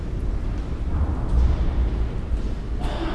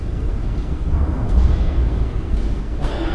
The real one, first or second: first